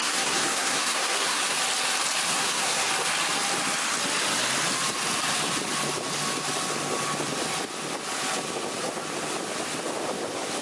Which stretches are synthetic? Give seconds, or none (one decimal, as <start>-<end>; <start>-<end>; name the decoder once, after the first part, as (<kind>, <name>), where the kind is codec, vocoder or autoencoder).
0.0-1.4 (codec, SNAC); 2.3-2.9